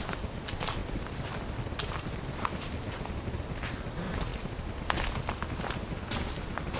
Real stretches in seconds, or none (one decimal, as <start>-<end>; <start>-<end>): 0.0-0.8; 2.7-6.8